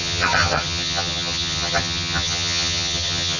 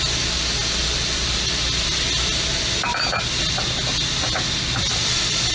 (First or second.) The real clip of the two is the second